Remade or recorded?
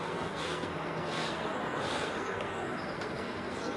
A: remade